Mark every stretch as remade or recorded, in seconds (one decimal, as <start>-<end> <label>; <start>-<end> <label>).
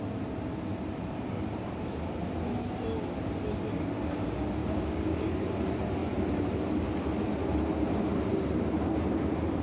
0.0-4.6 recorded; 4.6-5.3 remade; 5.3-9.6 recorded